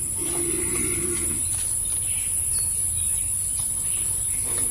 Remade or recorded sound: recorded